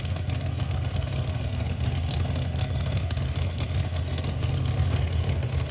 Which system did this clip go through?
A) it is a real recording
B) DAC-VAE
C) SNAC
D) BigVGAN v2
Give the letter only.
C